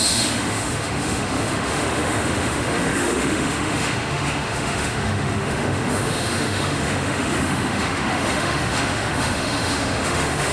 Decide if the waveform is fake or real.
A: fake